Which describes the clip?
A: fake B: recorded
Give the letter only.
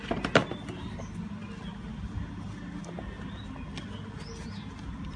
B